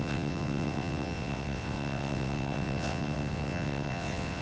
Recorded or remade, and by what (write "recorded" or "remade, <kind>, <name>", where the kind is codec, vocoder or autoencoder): remade, vocoder, WaveNeXt